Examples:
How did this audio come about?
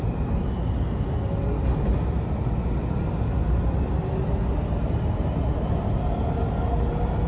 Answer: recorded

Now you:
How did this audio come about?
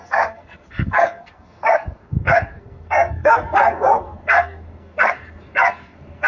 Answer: remade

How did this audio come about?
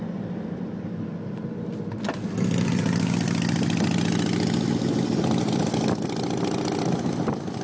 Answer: recorded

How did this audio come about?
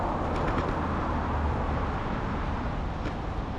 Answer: recorded